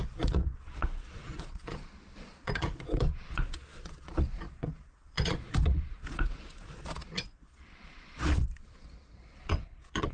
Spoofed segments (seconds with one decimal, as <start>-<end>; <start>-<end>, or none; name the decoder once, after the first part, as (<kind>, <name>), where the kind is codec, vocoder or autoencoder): 0.0-10.1 (vocoder, Vocos)